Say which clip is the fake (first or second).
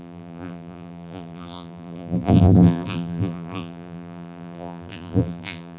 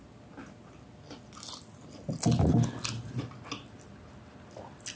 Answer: first